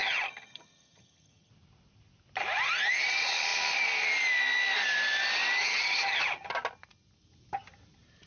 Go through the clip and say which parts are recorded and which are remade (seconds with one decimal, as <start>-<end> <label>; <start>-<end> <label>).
0.0-1.5 remade; 1.5-5.6 recorded; 5.6-6.2 remade; 6.2-8.3 recorded